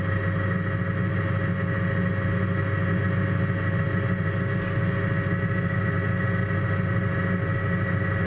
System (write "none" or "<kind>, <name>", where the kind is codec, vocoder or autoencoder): none